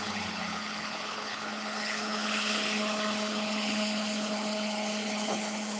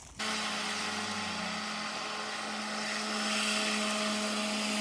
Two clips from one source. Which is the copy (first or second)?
first